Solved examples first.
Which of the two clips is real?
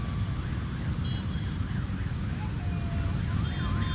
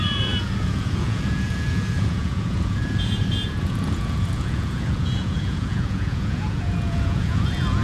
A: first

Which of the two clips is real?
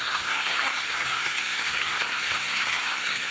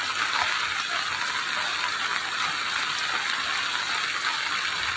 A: second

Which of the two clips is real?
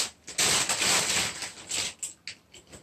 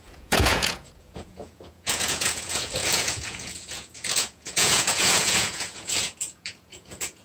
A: first